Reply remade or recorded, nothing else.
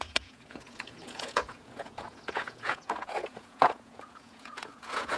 remade